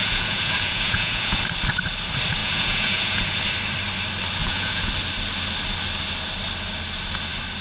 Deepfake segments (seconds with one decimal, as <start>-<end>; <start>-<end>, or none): 0.0-1.4; 2.4-3.4; 4.4-4.9